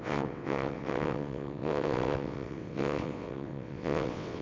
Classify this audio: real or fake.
fake